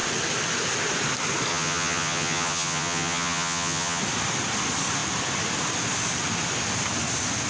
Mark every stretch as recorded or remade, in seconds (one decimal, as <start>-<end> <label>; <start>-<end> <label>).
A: 0.0-1.5 recorded; 1.5-4.0 remade; 4.0-7.5 recorded